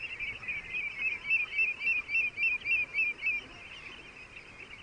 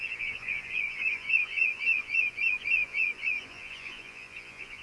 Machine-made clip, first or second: second